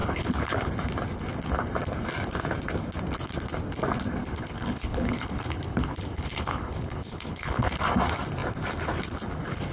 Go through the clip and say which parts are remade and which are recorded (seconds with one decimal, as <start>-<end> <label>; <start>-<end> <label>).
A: 0.0-0.7 remade; 0.7-4.2 recorded; 4.2-7.7 remade; 7.7-9.7 recorded